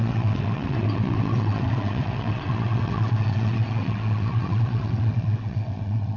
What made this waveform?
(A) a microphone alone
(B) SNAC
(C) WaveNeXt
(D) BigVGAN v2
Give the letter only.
C